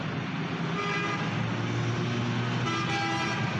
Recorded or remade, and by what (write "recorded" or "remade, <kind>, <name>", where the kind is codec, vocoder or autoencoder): recorded